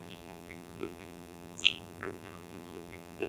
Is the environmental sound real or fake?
fake